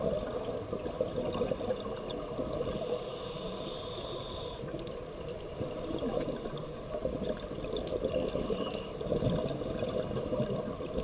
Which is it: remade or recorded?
recorded